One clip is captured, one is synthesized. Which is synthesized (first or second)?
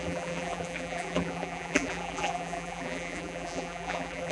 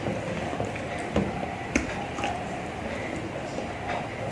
first